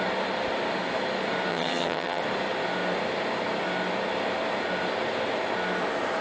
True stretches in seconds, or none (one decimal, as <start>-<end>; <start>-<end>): 0.0-1.5; 2.2-6.2